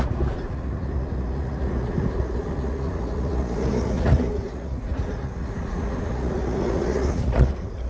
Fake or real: fake